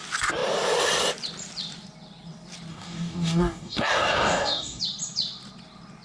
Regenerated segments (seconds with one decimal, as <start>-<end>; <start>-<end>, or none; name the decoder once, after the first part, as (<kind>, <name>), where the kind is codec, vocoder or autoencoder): 2.7-4.8 (codec, DAC)